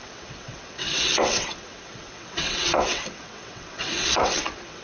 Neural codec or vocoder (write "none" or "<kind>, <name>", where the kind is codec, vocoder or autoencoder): vocoder, WaveNeXt